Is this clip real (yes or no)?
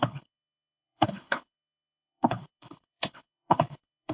no